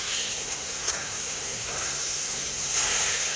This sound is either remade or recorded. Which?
remade